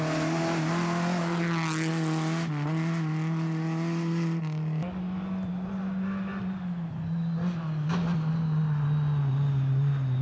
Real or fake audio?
real